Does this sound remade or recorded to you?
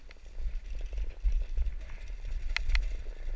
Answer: recorded